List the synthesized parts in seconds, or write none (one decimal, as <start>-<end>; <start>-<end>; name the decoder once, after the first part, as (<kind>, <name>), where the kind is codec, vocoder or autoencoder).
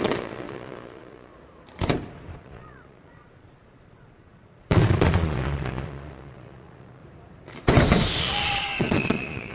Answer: 0.0-1.3 (vocoder, Vocos); 2.4-7.0; 8.2-9.5